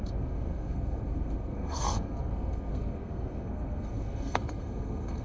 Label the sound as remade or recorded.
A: remade